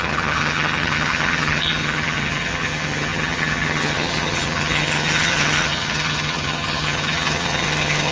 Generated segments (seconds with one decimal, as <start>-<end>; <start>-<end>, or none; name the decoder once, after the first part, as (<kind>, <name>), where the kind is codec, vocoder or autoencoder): 0.0-8.1 (vocoder, HiFi-GAN)